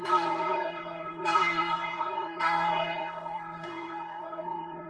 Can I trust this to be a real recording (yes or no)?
no